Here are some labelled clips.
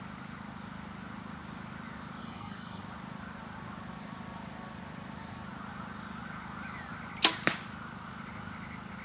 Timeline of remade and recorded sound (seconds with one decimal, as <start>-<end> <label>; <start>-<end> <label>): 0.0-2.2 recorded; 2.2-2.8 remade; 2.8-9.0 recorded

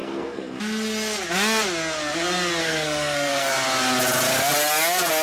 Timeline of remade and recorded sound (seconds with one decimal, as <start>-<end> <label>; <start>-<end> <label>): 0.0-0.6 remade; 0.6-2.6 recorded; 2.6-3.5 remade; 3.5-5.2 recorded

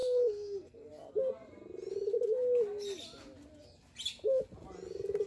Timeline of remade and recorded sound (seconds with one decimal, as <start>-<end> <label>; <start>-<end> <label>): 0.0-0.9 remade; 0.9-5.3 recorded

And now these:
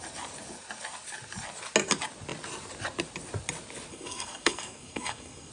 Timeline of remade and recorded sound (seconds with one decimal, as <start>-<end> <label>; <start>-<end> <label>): 0.0-3.9 recorded; 3.9-5.5 remade

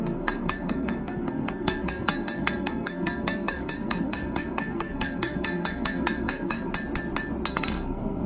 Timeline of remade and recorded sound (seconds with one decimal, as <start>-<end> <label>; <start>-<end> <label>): 0.0-6.7 remade; 6.7-7.5 recorded; 7.5-8.3 remade

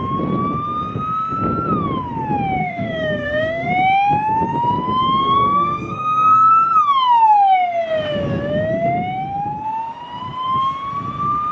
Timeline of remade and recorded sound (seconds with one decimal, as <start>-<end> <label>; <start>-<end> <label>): 0.0-2.6 recorded; 2.6-3.7 remade; 3.7-5.2 recorded; 5.2-6.5 remade; 6.5-11.5 recorded

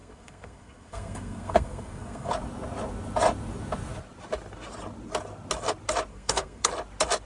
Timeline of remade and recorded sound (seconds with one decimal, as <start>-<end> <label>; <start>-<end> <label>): 0.0-2.3 remade; 2.3-6.1 recorded; 6.1-6.7 remade; 6.7-7.3 recorded

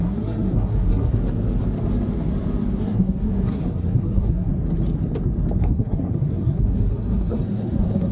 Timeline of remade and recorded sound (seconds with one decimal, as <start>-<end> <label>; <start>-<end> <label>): 0.0-1.2 remade; 1.2-2.8 recorded; 2.8-4.5 remade; 4.5-5.6 recorded; 5.6-8.1 remade